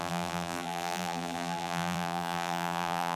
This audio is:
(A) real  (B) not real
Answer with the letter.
B